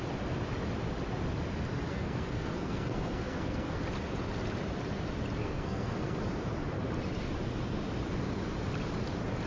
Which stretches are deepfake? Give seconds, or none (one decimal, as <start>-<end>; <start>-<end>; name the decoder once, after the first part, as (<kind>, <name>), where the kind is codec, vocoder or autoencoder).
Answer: 1.9-3.8 (codec, SNAC); 5.4-6.2